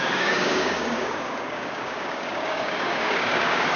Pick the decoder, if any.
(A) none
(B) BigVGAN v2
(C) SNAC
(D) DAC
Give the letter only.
D